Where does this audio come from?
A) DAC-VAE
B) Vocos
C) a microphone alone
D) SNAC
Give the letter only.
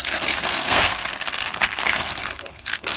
D